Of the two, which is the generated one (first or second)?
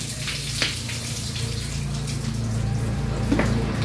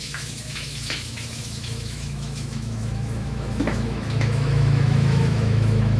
second